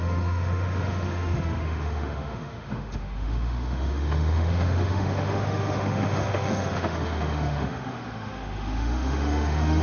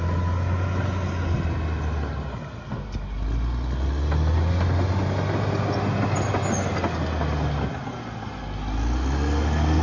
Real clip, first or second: second